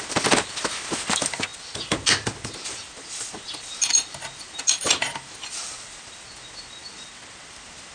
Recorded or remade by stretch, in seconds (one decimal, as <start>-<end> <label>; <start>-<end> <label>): 0.0-7.9 recorded